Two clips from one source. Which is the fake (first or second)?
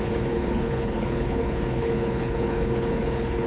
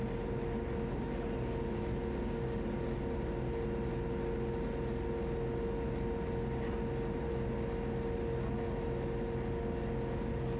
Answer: first